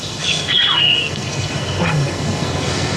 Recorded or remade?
remade